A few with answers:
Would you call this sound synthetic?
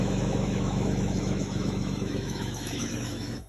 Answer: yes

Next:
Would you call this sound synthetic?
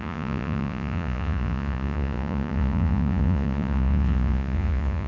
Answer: yes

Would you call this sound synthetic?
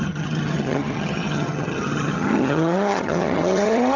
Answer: yes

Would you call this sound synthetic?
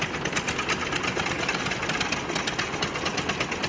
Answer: no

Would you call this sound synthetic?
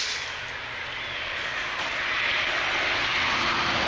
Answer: no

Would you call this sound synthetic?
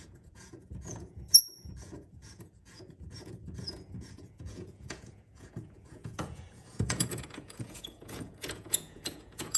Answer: yes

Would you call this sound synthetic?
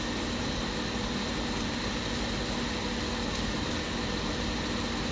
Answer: no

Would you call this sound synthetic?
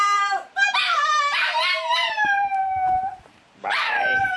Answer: yes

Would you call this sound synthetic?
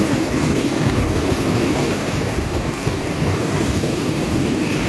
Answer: yes